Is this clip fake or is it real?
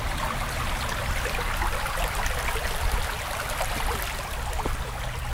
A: real